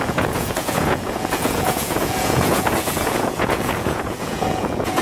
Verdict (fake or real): fake